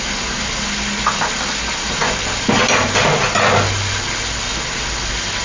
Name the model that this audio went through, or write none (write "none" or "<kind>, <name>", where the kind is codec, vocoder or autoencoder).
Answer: none